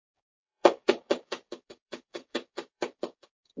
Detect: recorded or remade remade